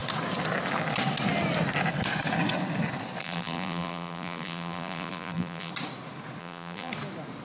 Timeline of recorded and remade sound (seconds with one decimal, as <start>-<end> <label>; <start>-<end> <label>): 0.0-3.2 recorded; 3.2-5.7 remade; 5.7-6.4 recorded; 6.4-6.9 remade; 6.9-7.4 recorded